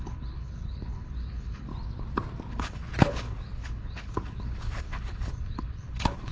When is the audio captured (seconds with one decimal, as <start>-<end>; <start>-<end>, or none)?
1.7-2.5